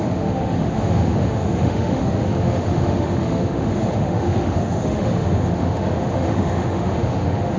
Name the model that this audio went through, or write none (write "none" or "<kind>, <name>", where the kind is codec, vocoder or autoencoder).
autoencoder, DAC-VAE